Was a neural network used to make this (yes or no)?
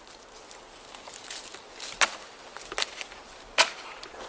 no